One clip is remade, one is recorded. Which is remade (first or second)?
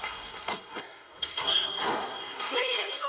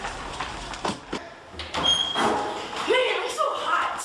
first